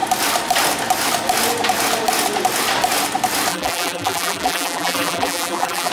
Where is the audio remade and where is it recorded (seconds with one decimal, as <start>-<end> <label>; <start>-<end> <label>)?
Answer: 0.0-3.5 recorded; 3.5-5.9 remade